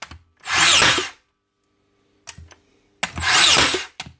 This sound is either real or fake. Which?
real